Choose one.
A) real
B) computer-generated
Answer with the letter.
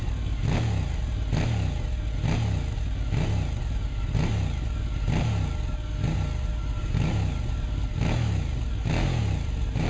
A